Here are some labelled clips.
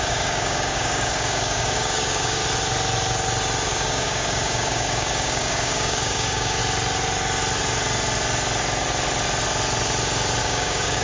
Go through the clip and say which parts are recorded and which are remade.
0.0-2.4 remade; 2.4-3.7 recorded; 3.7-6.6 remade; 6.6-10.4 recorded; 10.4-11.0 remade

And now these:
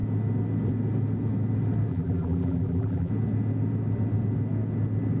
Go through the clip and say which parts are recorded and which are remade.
0.0-1.9 recorded; 1.9-3.1 remade; 3.1-5.2 recorded

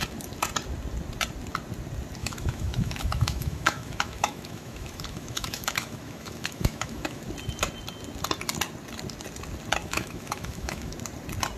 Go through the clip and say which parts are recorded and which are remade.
0.0-2.2 recorded; 2.2-7.2 remade; 7.2-9.8 recorded; 9.8-10.9 remade; 10.9-11.6 recorded

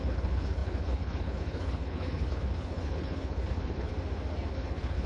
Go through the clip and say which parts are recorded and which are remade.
0.0-3.9 remade; 3.9-4.5 recorded; 4.5-5.1 remade

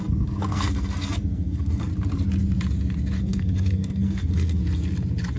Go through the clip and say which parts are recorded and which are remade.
0.0-1.9 remade; 1.9-3.2 recorded; 3.2-4.6 remade; 4.6-5.4 recorded

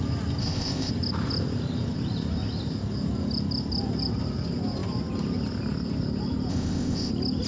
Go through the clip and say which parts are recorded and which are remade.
0.0-0.4 recorded; 0.4-0.9 remade; 0.9-6.5 recorded; 6.5-7.1 remade; 7.1-7.5 recorded